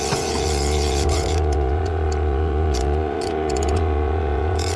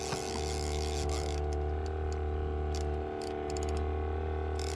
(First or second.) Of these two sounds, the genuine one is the second